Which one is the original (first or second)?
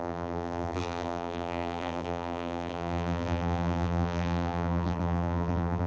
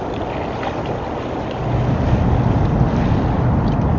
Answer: second